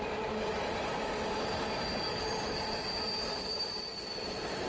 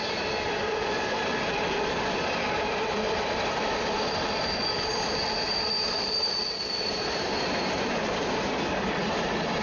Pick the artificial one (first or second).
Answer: second